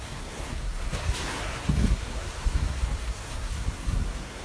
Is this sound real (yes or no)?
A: no